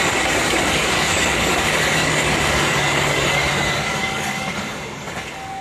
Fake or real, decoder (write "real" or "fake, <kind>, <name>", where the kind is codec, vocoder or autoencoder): fake, codec, DAC